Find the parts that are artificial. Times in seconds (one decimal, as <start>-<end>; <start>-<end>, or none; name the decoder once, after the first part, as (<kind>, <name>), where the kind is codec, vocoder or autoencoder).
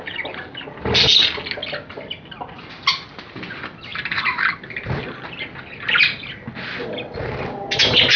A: 2.9-3.4 (vocoder, BigVGAN v2); 3.9-4.5